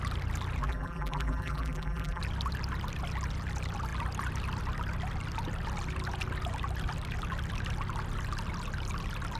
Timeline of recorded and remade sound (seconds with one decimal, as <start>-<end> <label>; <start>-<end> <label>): 0.0-0.6 recorded; 0.6-2.2 remade; 2.2-9.4 recorded